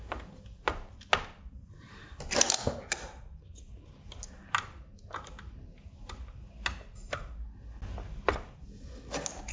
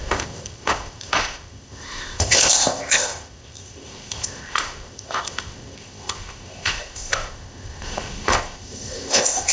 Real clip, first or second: first